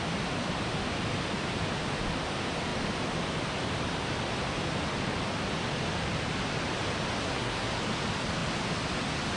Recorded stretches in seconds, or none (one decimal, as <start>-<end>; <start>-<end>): 0.0-7.2; 7.7-9.4